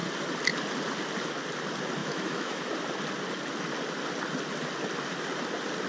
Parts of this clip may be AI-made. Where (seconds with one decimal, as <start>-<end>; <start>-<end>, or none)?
2.0-2.7